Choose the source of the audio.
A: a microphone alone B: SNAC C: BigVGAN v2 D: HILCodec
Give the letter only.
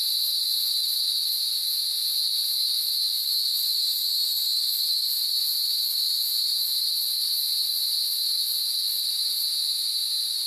A